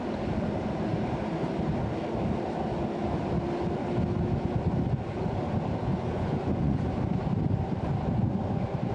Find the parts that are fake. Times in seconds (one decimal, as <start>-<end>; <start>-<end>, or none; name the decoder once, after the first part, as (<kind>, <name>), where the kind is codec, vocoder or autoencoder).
5.9-6.8 (vocoder, Vocos)